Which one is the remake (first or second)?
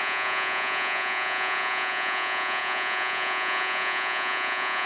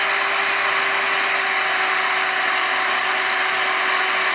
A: first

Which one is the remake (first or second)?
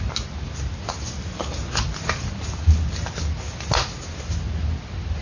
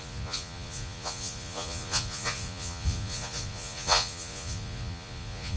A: second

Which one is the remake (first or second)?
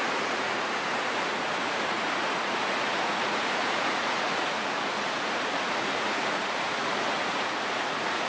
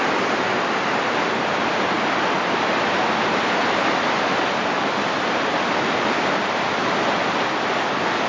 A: first